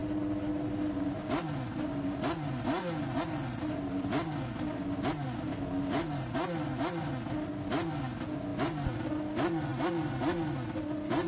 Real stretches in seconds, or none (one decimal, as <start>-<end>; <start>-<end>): 0.0-11.3

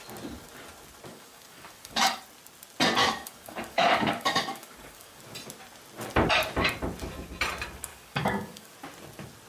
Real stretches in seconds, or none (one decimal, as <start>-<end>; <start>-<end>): 0.0-1.1; 2.2-3.0; 5.2-7.9; 8.7-9.5

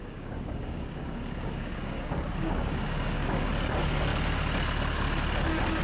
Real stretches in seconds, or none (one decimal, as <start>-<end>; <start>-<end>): 3.5-5.8

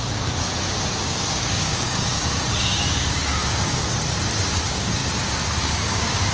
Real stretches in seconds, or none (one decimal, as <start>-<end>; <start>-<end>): 0.5-1.0; 3.8-4.5; 5.0-5.6

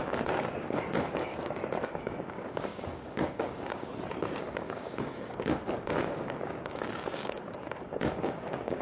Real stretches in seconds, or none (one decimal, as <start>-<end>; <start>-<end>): 3.9-4.4